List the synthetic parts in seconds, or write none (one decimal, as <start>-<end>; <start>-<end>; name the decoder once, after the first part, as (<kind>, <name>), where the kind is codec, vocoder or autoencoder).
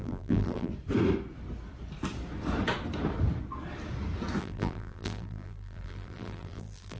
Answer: 0.0-0.7 (vocoder, BigVGAN v2); 4.4-7.0